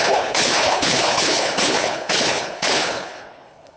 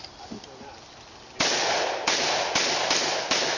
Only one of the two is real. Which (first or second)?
second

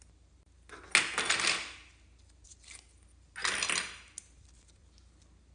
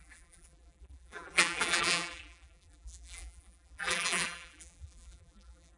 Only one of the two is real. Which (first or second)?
first